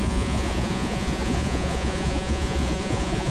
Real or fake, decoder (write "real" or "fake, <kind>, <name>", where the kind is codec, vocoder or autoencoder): fake, vocoder, Vocos